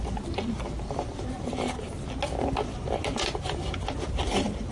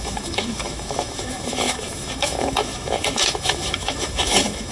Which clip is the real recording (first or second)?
first